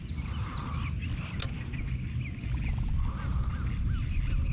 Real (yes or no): yes